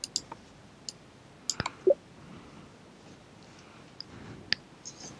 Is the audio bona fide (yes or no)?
yes